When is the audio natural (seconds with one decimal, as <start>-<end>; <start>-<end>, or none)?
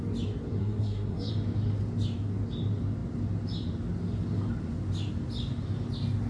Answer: 0.0-0.6; 1.3-6.3